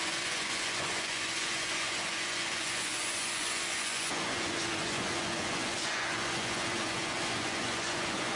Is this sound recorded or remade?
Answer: remade